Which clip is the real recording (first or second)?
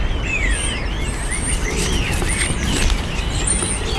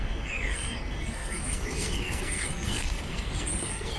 first